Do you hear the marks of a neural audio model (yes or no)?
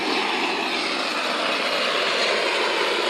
no